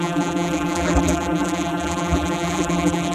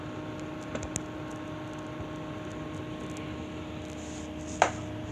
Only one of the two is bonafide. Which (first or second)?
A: second